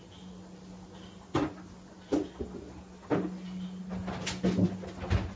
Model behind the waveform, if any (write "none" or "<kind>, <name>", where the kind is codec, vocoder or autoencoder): none